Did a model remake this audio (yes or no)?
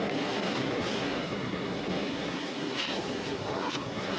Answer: yes